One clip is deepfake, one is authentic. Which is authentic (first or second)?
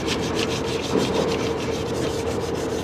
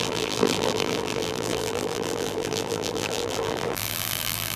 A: first